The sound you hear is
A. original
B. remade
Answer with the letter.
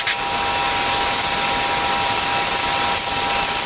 A